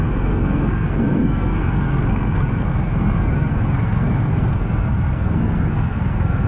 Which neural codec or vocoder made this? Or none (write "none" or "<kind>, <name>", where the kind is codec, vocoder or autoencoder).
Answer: codec, SNAC